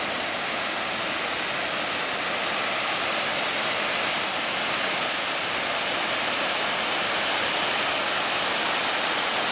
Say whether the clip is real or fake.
real